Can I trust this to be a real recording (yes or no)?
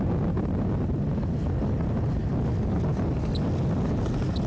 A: yes